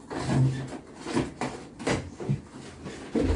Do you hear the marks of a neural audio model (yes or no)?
no